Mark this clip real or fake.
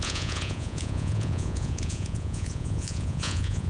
fake